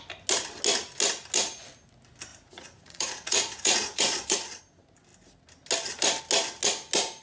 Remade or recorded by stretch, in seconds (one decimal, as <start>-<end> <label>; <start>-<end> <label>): 0.0-2.3 recorded; 2.3-4.6 remade; 4.6-7.2 recorded